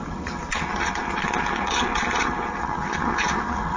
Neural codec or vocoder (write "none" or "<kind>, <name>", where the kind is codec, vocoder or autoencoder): vocoder, HiFi-GAN